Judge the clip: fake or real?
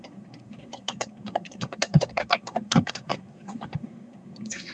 fake